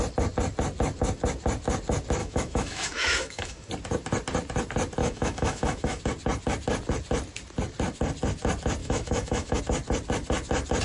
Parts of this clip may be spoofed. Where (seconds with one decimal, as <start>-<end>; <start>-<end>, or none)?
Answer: 2.2-3.7; 5.0-6.0; 8.8-9.6